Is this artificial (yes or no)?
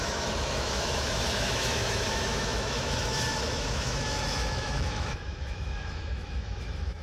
yes